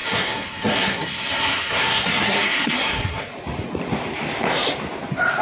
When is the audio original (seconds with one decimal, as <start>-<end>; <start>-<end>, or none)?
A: 3.2-5.4